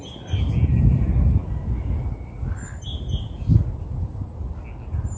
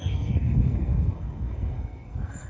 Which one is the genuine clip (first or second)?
first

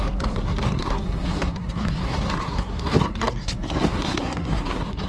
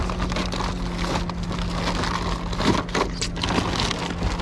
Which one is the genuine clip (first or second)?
second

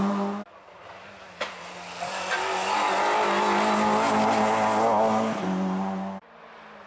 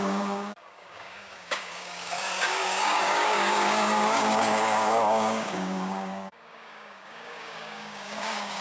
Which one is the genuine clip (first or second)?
first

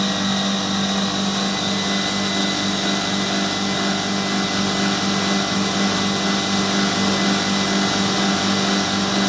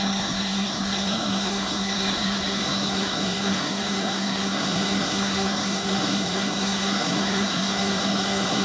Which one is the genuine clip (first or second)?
first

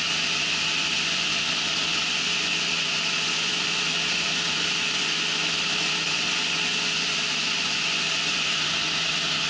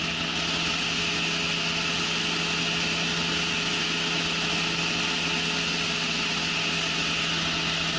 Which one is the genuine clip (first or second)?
second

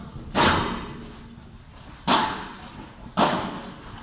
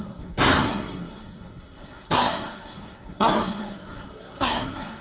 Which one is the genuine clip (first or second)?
first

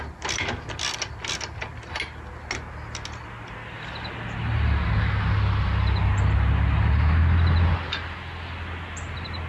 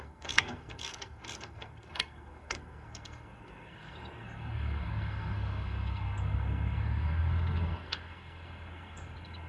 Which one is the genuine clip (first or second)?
first